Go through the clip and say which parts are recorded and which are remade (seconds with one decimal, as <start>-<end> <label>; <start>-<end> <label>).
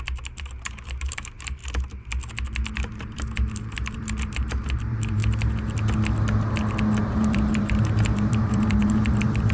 0.0-1.6 remade; 1.6-2.7 recorded; 2.7-5.2 remade; 5.2-7.0 recorded; 7.0-9.5 remade